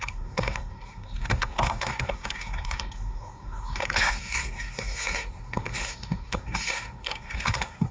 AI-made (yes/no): yes